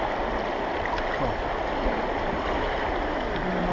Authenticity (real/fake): real